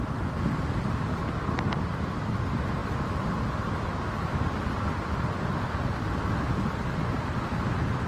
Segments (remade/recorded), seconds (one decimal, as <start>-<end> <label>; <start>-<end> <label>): 0.0-8.1 recorded